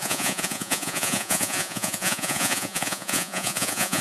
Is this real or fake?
fake